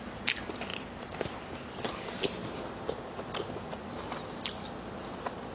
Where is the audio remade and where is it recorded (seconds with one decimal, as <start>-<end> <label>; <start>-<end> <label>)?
0.0-0.7 recorded; 0.7-1.4 remade; 1.4-5.5 recorded